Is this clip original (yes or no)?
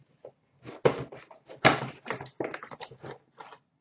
yes